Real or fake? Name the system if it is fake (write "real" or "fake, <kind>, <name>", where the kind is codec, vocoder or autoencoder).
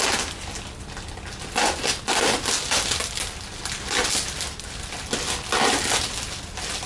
real